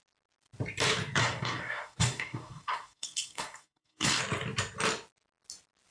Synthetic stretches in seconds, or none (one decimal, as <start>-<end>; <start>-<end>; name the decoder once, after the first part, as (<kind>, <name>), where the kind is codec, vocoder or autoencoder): 1.2-4.2 (codec, SNAC)